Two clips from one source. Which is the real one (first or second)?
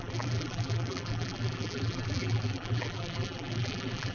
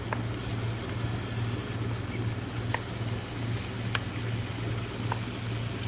second